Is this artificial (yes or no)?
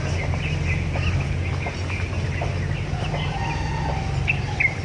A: no